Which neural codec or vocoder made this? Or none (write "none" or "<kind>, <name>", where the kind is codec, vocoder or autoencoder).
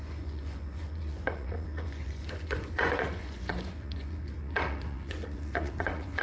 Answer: vocoder, Vocos